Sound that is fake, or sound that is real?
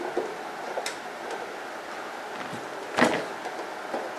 real